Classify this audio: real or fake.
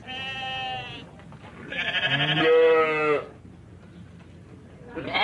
real